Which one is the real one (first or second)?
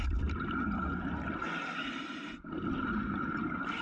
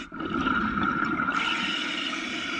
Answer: first